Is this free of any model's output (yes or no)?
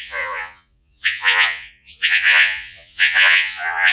no